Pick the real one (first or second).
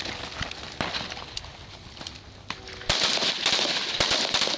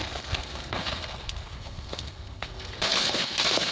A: first